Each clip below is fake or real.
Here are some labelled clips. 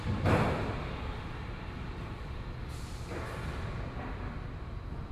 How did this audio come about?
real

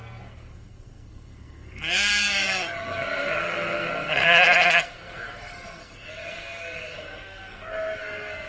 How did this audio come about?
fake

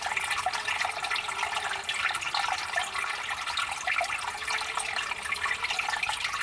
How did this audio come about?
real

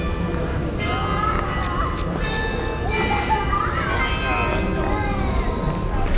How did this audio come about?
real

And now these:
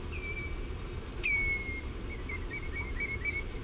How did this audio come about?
real